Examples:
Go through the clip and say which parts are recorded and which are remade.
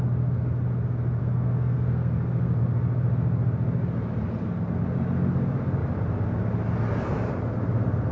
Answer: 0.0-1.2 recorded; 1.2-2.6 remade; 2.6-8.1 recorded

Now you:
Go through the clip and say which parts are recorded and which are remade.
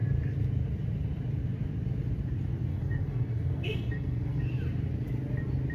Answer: 0.0-2.7 recorded; 2.7-4.4 remade; 4.4-5.7 recorded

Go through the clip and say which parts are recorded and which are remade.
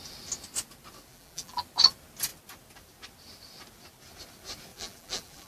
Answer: 0.0-1.1 recorded; 1.1-1.6 remade; 1.6-4.7 recorded; 4.7-5.5 remade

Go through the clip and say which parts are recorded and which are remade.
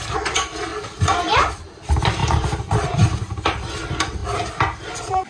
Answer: 0.0-0.7 recorded; 0.7-1.5 remade; 1.5-2.2 recorded; 2.2-3.7 remade; 3.7-5.3 recorded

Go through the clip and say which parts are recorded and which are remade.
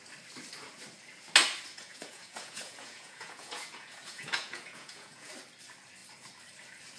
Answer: 0.0-1.7 recorded; 1.7-5.3 remade; 5.3-7.0 recorded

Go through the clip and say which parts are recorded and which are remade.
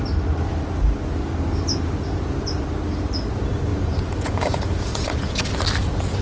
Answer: 0.0-3.7 recorded; 3.7-5.5 remade; 5.5-6.2 recorded